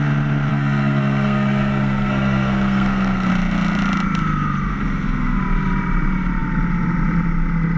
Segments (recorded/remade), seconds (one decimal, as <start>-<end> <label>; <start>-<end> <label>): 0.0-0.5 recorded; 0.5-3.3 remade; 3.3-4.7 recorded; 4.7-5.4 remade; 5.4-7.8 recorded